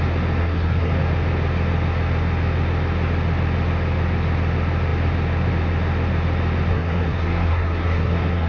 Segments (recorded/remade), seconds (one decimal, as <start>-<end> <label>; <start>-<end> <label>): 0.0-0.4 recorded; 0.4-0.9 remade; 0.9-6.7 recorded; 6.7-8.5 remade